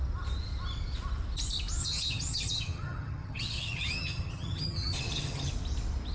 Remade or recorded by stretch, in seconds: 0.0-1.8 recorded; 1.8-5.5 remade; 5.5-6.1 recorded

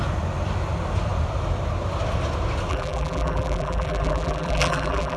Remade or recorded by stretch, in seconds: 0.0-2.7 recorded; 2.7-5.2 remade

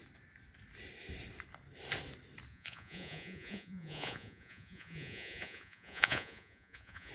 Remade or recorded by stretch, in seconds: 0.0-2.5 recorded; 2.5-7.1 remade

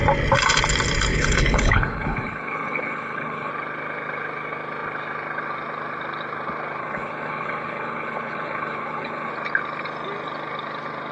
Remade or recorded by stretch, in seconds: 0.0-1.1 recorded; 1.1-3.5 remade; 3.5-6.8 recorded; 6.8-9.3 remade; 9.3-11.1 recorded

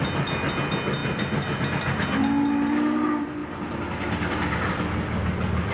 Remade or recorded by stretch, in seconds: 0.0-5.7 recorded

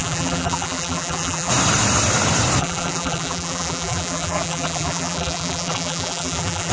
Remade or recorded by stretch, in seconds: 0.0-1.5 remade; 1.5-2.6 recorded; 2.6-6.7 remade